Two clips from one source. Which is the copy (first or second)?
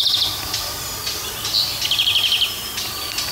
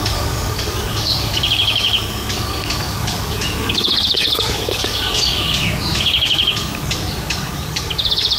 second